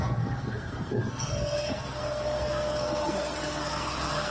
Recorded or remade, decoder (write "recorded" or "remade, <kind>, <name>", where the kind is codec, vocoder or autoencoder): remade, codec, SNAC